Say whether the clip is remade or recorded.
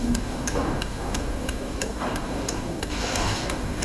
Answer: remade